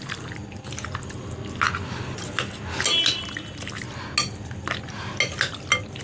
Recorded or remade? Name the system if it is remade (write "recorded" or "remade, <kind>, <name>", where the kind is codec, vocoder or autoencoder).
recorded